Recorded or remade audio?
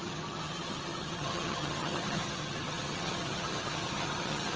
remade